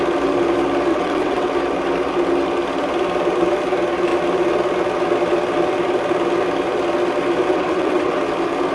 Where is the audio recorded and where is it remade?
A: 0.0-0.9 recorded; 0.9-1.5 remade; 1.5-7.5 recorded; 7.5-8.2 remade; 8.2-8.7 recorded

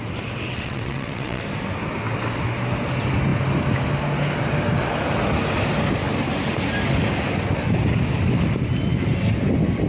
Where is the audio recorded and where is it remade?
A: 0.0-0.5 recorded; 0.5-1.4 remade; 1.4-9.9 recorded

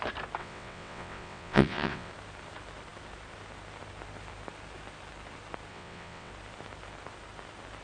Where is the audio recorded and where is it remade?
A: 0.0-0.4 recorded; 0.4-2.1 remade; 2.1-5.7 recorded; 5.7-6.3 remade; 6.3-7.8 recorded

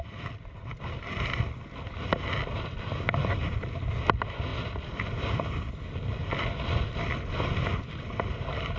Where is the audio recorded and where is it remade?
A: 0.0-8.8 recorded

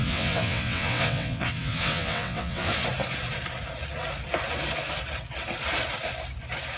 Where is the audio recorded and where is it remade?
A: 0.0-2.7 remade; 2.7-6.8 recorded

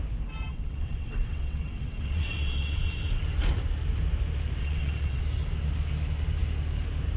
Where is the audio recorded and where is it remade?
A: 0.0-0.5 recorded; 0.5-3.2 remade; 3.2-4.6 recorded; 4.6-5.2 remade; 5.2-7.2 recorded